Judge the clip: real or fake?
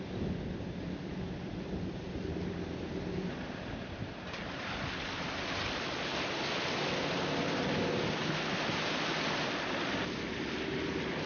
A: real